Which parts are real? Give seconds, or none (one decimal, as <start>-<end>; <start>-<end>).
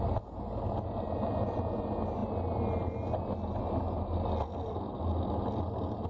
0.0-6.1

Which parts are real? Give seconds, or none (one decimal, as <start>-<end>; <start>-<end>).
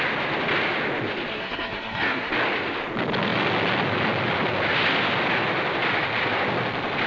0.0-1.3; 2.3-7.1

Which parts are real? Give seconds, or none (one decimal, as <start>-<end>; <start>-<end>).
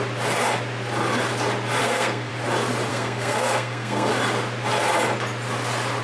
0.0-1.8; 2.3-2.9; 4.1-6.0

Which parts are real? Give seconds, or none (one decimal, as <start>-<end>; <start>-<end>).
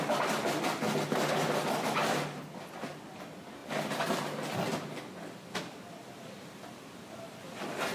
0.0-7.9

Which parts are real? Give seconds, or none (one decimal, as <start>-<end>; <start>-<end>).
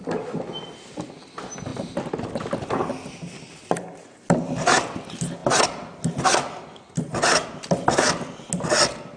0.0-9.2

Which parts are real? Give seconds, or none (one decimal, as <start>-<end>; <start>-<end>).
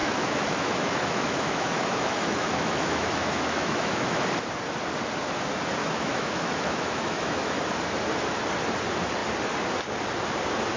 4.2-5.8; 7.6-10.8